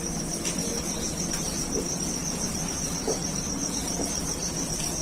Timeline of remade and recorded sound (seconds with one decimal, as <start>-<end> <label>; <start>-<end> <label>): 0.0-5.0 recorded